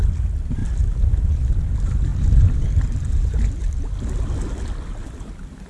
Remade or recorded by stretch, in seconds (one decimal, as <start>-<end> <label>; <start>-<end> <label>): 0.0-5.7 recorded